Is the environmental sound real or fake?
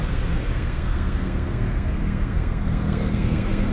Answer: fake